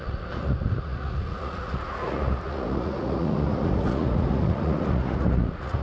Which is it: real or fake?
fake